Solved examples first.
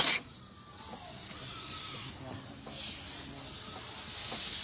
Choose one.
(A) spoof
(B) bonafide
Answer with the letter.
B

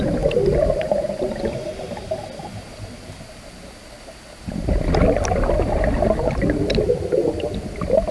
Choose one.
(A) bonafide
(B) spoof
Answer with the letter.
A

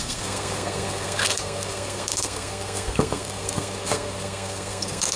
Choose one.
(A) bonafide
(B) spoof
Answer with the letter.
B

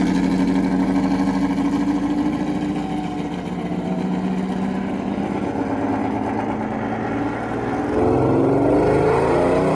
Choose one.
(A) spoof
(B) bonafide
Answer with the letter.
B